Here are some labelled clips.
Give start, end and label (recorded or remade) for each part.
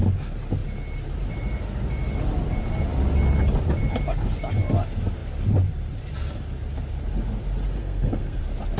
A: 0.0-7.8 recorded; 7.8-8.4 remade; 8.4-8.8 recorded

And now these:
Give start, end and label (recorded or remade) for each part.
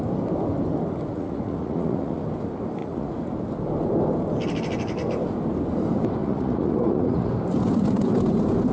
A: 0.0-1.1 recorded; 1.1-2.2 remade; 2.2-2.8 recorded; 2.8-3.3 remade; 3.3-6.2 recorded; 6.2-7.3 remade; 7.3-8.7 recorded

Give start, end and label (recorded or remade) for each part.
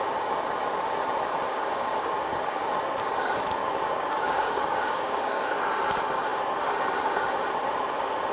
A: 0.0-1.5 recorded; 1.5-2.6 remade; 2.6-3.6 recorded; 3.6-5.6 remade; 5.6-8.3 recorded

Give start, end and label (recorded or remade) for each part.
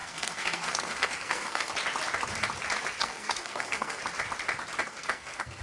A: 0.0-1.7 remade; 1.7-3.0 recorded; 3.0-4.0 remade; 4.0-4.8 recorded; 4.8-5.6 remade